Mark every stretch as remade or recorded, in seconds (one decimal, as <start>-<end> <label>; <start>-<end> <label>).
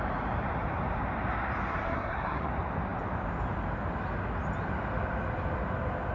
0.0-1.7 recorded; 1.7-2.5 remade; 2.5-6.1 recorded